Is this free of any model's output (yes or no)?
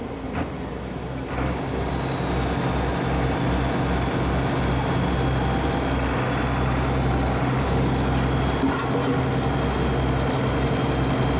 yes